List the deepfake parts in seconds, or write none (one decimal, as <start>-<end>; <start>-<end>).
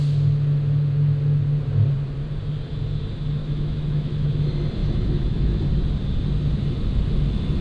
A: 3.4-4.3; 4.8-5.6